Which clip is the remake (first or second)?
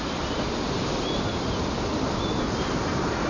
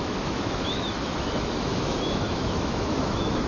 second